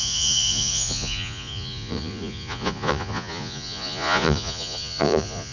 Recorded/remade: remade